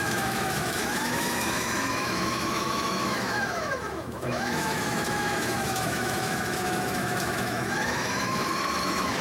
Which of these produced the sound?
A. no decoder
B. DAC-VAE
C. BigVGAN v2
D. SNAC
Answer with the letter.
B